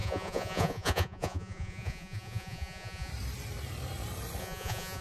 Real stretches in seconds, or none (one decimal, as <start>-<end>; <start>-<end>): 3.1-4.4